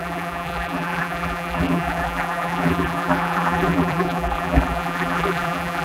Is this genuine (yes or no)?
no